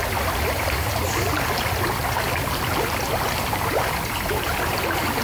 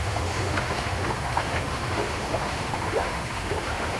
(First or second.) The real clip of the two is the first